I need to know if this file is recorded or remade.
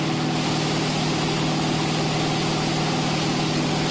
recorded